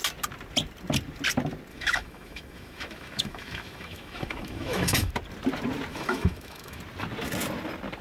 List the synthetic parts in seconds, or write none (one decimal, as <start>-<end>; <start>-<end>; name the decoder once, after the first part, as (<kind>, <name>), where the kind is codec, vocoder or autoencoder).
1.7-5.1 (autoencoder, DAC-VAE); 5.9-6.8